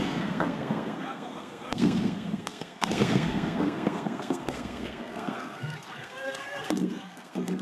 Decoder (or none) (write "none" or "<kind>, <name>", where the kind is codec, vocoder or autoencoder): codec, SNAC